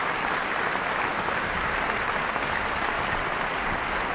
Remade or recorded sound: recorded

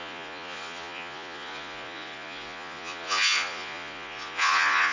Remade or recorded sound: remade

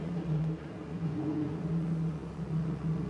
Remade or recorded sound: remade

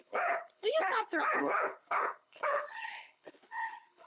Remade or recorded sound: remade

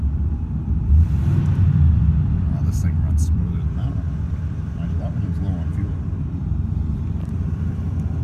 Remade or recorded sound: remade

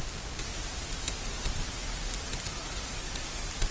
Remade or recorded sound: recorded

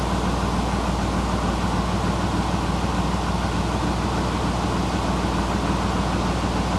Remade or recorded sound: recorded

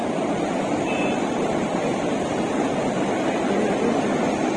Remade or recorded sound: recorded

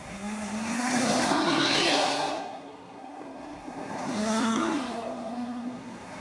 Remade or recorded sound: remade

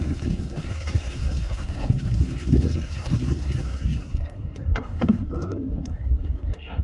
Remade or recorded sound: remade